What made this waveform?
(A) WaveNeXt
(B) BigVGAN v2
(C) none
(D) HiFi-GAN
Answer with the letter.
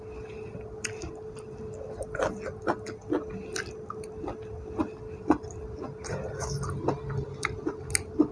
C